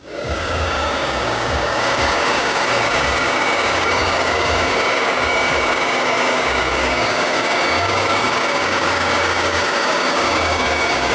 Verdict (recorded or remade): remade